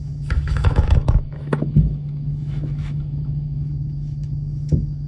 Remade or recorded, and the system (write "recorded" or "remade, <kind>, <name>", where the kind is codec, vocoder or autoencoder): remade, autoencoder, DAC-VAE